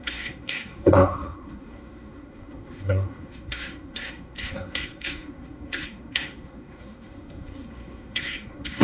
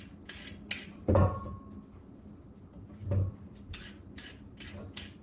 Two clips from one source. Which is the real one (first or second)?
second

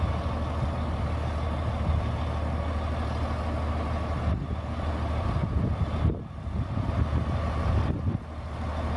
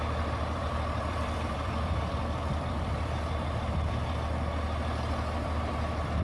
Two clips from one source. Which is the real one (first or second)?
first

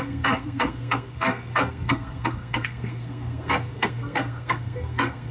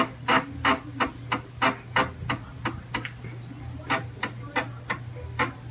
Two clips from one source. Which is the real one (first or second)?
second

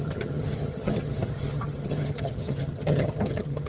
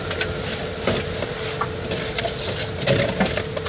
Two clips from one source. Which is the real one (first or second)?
second